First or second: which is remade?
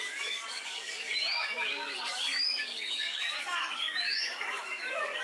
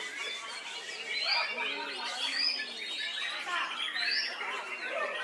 first